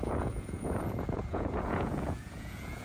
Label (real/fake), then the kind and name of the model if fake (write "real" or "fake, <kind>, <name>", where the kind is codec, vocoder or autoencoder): fake, vocoder, Vocos